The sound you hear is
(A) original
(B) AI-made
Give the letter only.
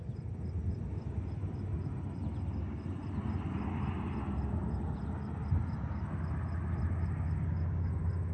A